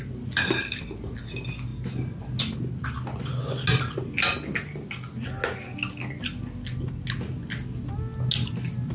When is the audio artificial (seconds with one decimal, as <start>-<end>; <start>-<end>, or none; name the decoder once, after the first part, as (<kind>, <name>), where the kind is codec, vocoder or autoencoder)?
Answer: none